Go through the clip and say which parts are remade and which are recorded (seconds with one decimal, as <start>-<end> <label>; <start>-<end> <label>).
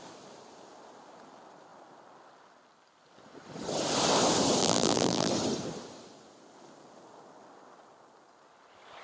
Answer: 0.0-4.6 recorded; 4.6-5.3 remade; 5.3-9.0 recorded